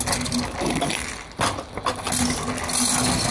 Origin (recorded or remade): recorded